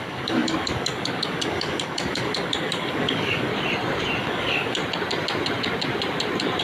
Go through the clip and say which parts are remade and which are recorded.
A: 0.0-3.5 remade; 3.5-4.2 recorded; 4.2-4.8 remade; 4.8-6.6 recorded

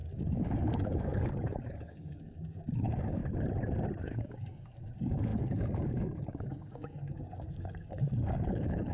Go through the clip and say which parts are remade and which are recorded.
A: 0.0-3.2 remade; 3.2-4.0 recorded; 4.0-8.9 remade

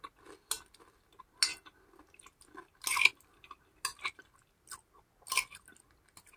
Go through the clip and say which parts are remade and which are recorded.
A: 0.0-6.4 recorded

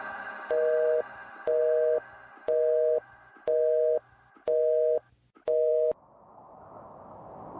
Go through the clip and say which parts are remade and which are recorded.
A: 0.0-7.6 recorded

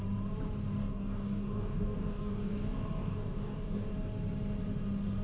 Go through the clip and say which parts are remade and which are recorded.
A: 0.0-0.8 recorded; 0.8-3.9 remade; 3.9-5.2 recorded

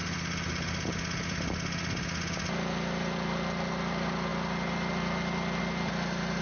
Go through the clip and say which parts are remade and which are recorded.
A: 0.0-6.4 recorded

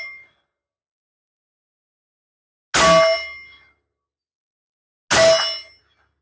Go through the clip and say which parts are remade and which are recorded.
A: 0.0-6.2 recorded

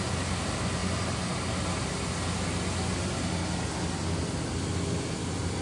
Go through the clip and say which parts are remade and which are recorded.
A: 0.0-5.6 recorded